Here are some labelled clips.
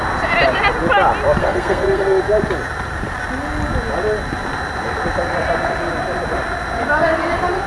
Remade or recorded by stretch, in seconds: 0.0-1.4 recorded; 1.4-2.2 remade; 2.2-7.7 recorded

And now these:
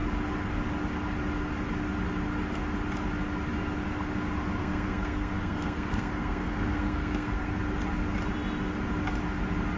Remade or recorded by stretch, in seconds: 0.0-4.6 recorded; 4.6-7.6 remade; 7.6-9.8 recorded